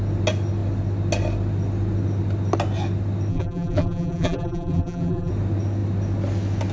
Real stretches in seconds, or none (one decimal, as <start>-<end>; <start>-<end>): 0.0-3.3; 5.3-6.7